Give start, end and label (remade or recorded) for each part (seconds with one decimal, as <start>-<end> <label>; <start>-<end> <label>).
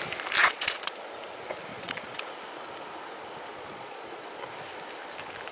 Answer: 0.0-0.4 recorded; 0.4-1.0 remade; 1.0-1.7 recorded; 1.7-2.2 remade; 2.2-3.5 recorded; 3.5-4.1 remade; 4.1-5.5 recorded